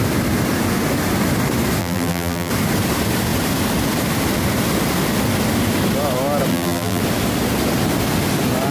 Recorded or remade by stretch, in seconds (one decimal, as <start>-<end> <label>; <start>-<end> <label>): 0.0-1.8 recorded; 1.8-2.5 remade; 2.5-6.5 recorded; 6.5-7.0 remade; 7.0-8.7 recorded